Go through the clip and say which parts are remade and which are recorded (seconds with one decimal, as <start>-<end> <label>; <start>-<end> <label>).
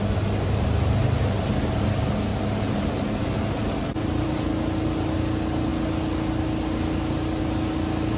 0.0-1.0 recorded; 1.0-1.5 remade; 1.5-2.3 recorded; 2.3-4.5 remade; 4.5-8.2 recorded